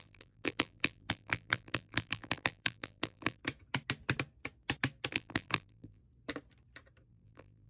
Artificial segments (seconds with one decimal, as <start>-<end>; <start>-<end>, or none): 0.0-3.4; 5.1-6.0; 7.1-7.7